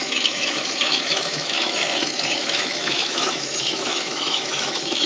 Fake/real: fake